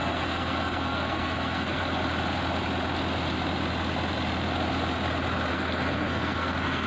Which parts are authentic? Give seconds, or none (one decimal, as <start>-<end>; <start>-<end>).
1.8-5.5